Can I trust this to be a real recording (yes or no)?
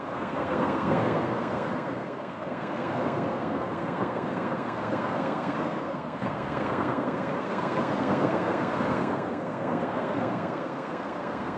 no